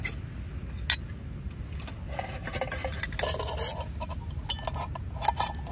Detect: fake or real real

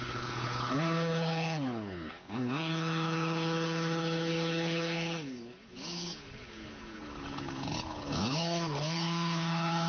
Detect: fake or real fake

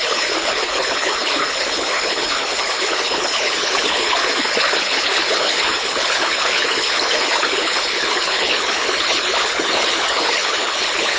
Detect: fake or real fake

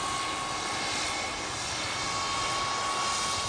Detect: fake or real real